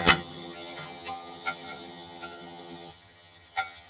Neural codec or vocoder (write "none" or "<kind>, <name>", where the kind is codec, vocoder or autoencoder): vocoder, HiFi-GAN